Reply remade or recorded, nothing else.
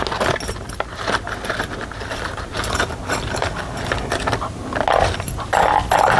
recorded